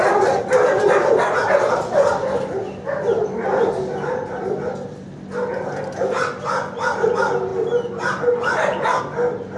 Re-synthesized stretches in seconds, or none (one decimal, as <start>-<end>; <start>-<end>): none